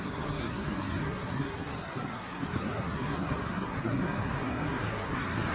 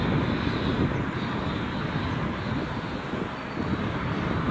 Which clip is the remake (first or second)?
first